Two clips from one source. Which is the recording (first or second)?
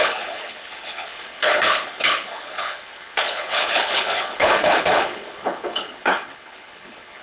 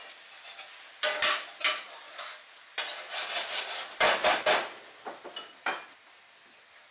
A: second